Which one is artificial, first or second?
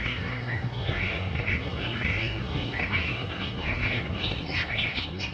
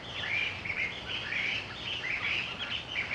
first